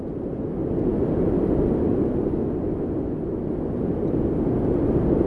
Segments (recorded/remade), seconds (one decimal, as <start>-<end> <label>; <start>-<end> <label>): 0.0-5.3 recorded